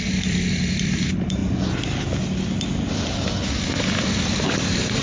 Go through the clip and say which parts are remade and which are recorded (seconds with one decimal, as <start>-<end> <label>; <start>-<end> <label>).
0.0-1.4 remade; 1.4-4.4 recorded; 4.4-5.0 remade

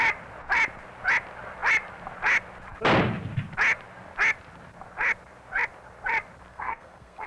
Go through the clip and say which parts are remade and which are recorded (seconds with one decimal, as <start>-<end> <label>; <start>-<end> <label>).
0.0-6.5 recorded; 6.5-7.3 remade